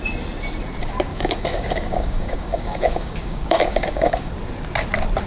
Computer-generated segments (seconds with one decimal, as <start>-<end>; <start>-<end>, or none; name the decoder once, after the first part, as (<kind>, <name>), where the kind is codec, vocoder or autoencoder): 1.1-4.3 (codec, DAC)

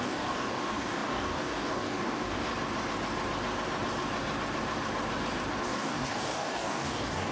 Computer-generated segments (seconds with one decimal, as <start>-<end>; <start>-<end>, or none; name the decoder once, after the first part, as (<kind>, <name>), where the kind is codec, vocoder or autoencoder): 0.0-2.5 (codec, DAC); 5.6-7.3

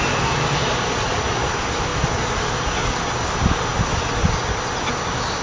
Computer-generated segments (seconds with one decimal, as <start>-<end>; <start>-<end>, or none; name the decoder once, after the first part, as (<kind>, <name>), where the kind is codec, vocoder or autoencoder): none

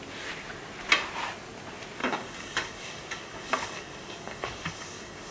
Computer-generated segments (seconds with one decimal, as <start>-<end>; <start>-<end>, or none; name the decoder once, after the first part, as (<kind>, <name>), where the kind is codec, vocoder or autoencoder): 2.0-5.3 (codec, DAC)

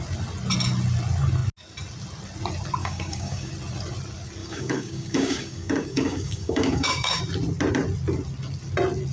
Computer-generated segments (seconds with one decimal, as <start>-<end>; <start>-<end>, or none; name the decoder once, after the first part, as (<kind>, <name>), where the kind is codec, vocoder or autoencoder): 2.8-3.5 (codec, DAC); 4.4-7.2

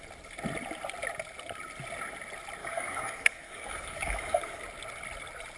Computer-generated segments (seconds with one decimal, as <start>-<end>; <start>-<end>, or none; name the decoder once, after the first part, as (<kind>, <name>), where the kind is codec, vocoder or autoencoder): 2.6-4.6 (codec, DAC)

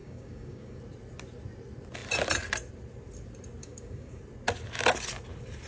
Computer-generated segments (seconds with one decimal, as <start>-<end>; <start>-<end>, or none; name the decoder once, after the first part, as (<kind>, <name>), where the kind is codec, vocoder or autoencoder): 0.0-0.8 (codec, DAC); 3.6-4.2

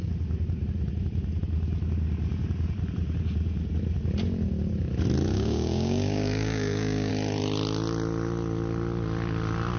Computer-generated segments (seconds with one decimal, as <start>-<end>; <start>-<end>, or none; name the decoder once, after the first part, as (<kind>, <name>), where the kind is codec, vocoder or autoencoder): 5.3-7.1 (codec, DAC)